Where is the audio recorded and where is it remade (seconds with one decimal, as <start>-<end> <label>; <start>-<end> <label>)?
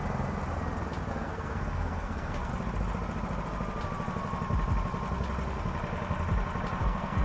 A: 0.0-1.1 recorded; 1.1-2.5 remade; 2.5-6.8 recorded; 6.8-7.2 remade